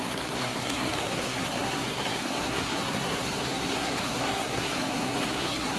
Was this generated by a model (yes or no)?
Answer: yes